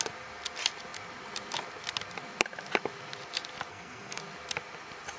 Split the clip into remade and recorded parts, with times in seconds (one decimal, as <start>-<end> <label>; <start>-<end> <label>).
0.0-3.7 recorded; 3.7-4.2 remade; 4.2-5.2 recorded